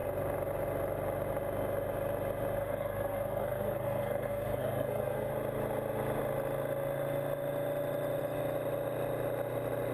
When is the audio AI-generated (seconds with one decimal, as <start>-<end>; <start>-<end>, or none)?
2.6-5.3